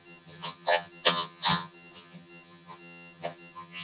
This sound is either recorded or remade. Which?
remade